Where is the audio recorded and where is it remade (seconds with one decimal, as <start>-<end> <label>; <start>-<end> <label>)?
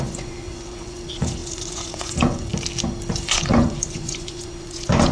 0.0-2.5 remade; 2.5-3.1 recorded; 3.1-5.1 remade